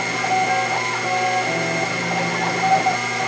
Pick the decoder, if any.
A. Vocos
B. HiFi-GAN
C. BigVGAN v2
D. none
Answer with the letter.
D